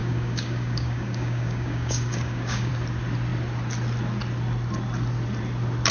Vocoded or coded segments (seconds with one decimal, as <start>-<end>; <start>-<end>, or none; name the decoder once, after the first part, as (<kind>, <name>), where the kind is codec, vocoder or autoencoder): 0.0-2.7 (codec, DAC)